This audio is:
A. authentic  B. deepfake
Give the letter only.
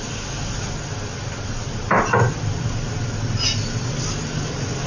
A